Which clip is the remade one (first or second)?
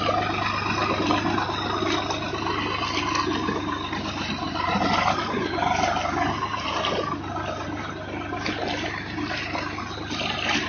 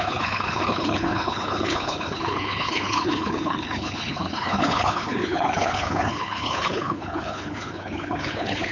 second